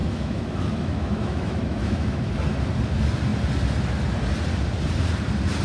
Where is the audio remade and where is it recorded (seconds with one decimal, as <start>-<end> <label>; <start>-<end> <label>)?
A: 0.0-2.3 remade; 2.3-5.6 recorded